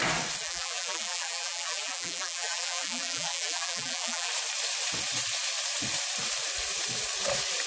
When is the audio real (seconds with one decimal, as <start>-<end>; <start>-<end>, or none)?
0.0-0.4; 4.3-7.7